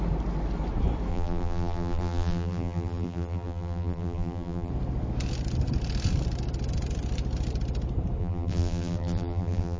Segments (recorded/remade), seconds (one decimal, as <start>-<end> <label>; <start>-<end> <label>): 0.0-1.1 recorded; 1.1-4.7 remade; 4.7-8.2 recorded; 8.2-9.8 remade